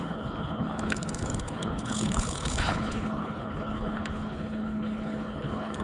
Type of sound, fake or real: fake